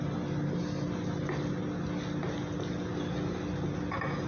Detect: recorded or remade recorded